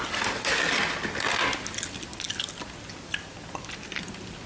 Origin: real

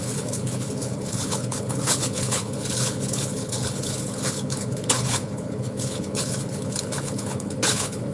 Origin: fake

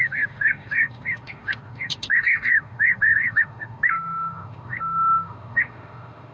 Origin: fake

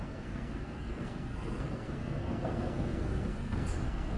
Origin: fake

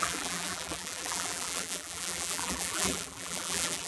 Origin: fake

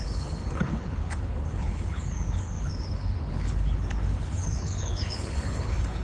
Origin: fake